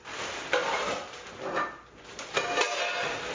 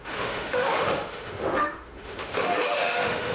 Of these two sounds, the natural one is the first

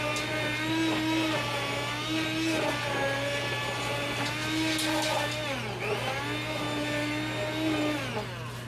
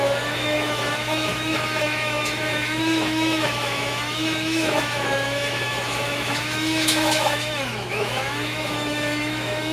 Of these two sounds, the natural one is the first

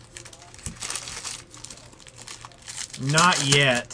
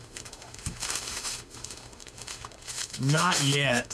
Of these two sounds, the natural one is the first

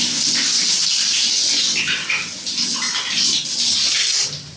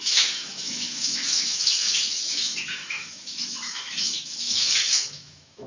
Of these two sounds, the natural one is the first